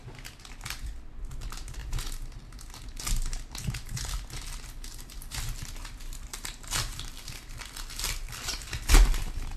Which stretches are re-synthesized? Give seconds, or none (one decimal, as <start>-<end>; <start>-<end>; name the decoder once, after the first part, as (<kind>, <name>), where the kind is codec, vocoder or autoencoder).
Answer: 6.3-7.5 (vocoder, BigVGAN v2)